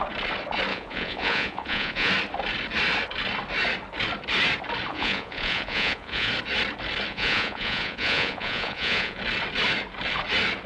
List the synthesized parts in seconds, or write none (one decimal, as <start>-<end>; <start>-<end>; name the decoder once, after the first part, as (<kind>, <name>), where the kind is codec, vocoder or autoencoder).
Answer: 0.7-2.1 (vocoder, Vocos); 4.9-6.3; 7.1-9.2